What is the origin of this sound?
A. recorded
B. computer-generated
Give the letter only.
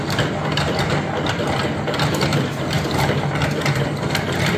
A